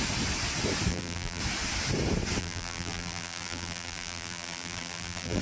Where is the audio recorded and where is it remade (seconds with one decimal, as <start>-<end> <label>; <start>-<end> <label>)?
0.0-0.9 recorded; 0.9-1.4 remade; 1.4-2.4 recorded; 2.4-5.4 remade